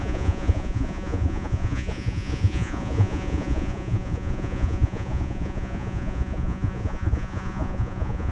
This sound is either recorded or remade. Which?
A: remade